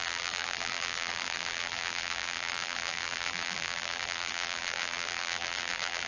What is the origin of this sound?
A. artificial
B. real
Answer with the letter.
A